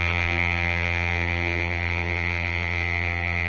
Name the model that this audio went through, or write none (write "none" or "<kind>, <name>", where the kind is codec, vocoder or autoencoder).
vocoder, BigVGAN v2